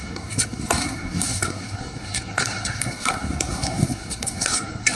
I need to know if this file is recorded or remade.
remade